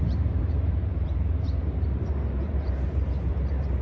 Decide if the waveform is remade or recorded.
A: remade